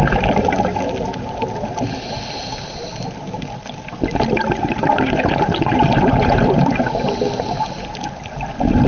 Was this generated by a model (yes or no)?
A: no